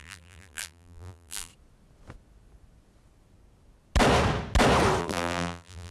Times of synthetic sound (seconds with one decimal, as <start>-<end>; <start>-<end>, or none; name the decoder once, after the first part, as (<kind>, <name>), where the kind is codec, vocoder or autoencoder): 0.0-1.5 (vocoder, BigVGAN v2); 5.0-5.9